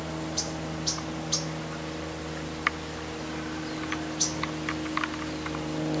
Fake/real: real